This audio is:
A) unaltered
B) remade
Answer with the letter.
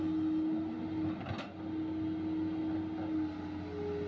A